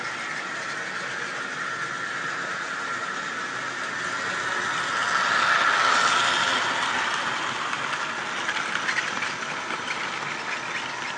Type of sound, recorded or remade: recorded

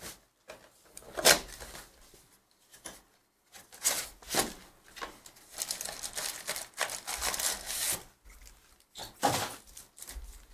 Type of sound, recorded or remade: recorded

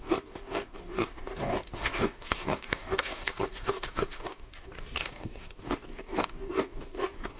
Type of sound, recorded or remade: remade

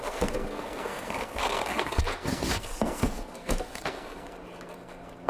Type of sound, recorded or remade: remade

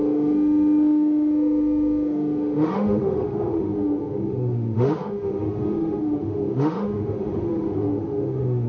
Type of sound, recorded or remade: remade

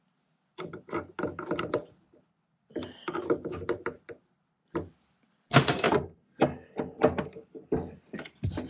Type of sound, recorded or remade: recorded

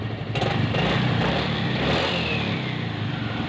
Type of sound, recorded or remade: recorded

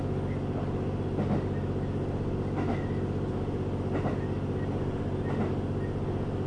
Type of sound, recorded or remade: recorded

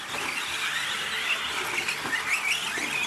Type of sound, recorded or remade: recorded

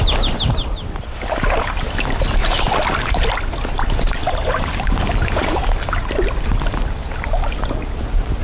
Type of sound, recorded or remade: recorded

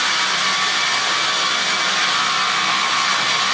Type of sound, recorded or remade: recorded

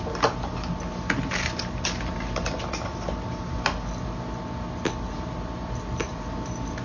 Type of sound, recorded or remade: recorded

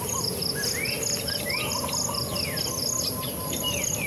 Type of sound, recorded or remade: recorded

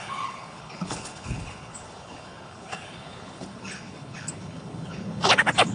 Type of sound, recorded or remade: remade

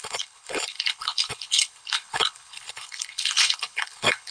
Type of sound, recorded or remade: remade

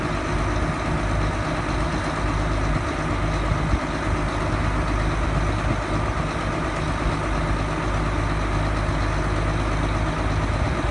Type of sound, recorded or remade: recorded